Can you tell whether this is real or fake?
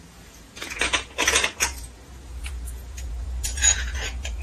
fake